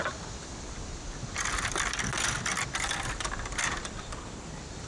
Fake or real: real